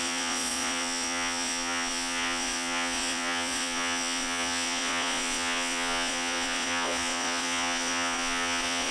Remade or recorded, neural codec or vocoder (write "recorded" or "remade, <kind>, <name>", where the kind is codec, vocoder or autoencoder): remade, vocoder, Vocos